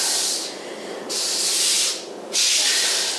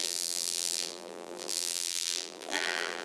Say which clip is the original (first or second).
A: first